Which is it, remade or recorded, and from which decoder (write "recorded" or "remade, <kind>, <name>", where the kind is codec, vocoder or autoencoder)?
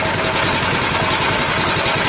recorded